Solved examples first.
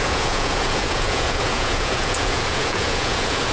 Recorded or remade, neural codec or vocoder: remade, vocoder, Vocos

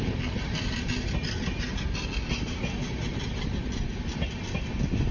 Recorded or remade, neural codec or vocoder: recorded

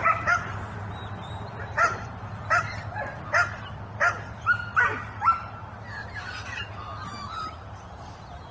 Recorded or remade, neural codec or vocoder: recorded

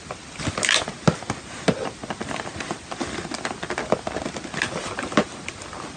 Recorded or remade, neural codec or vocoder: recorded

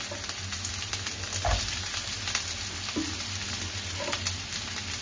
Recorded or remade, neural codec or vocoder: recorded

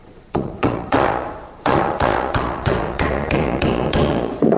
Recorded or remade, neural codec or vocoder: remade, vocoder, Vocos